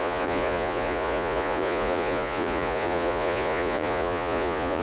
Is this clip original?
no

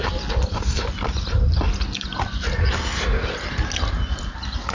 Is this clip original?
yes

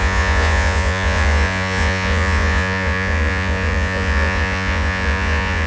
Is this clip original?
no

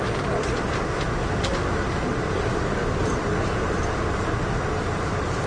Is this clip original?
yes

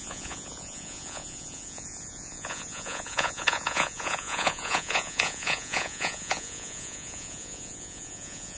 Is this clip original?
no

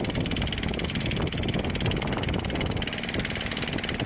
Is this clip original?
yes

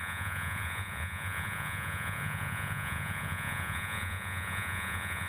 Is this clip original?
no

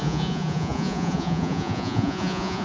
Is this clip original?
no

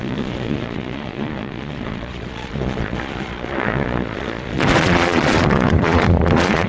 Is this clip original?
no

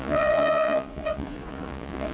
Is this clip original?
no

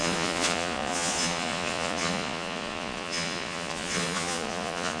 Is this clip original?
no